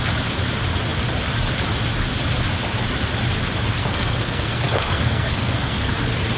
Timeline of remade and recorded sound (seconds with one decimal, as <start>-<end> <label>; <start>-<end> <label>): 0.0-3.8 recorded; 3.8-5.9 remade; 5.9-6.4 recorded